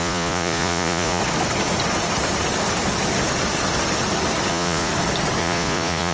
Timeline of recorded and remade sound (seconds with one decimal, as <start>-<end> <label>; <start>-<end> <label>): 0.0-1.2 remade; 1.2-4.5 recorded; 4.5-4.9 remade; 4.9-5.4 recorded; 5.4-6.1 remade